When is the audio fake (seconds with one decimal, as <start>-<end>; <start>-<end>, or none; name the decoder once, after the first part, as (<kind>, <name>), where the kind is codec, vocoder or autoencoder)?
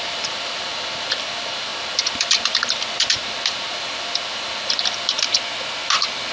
none